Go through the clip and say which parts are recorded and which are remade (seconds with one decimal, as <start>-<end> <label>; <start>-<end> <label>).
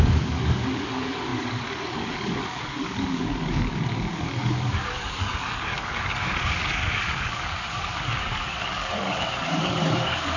0.0-10.4 remade